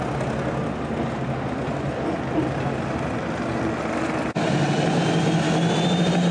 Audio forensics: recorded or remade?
recorded